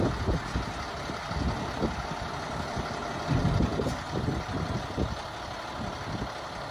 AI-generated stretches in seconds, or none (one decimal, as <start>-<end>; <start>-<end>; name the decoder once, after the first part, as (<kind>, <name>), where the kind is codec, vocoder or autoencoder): none